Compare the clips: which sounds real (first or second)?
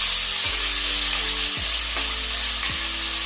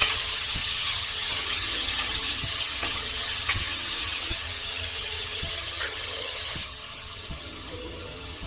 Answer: first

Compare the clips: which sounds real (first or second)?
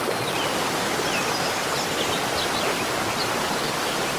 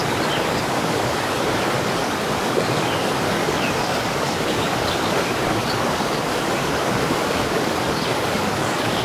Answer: first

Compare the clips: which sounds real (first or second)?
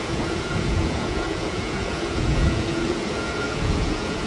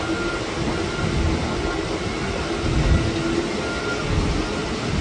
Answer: second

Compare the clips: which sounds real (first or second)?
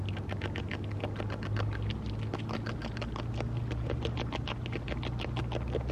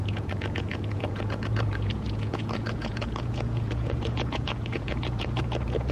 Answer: first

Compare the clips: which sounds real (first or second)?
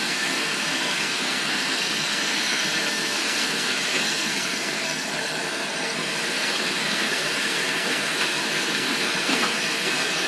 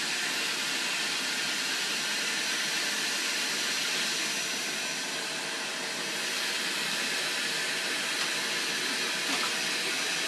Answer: second